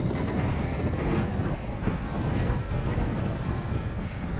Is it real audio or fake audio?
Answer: fake